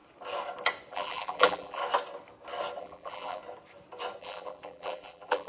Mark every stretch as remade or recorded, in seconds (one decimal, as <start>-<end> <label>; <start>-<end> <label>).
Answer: 0.0-0.9 recorded; 0.9-1.8 remade; 1.8-2.8 recorded; 2.8-3.4 remade; 3.4-4.2 recorded; 4.2-5.5 remade